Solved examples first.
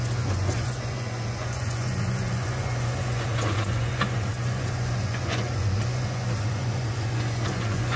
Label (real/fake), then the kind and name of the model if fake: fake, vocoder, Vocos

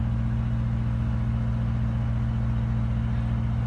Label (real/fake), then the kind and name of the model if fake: real